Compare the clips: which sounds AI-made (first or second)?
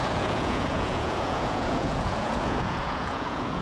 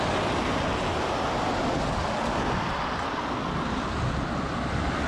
first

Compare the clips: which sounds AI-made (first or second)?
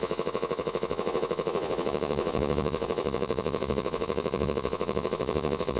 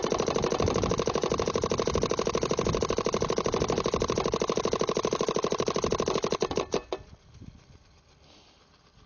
first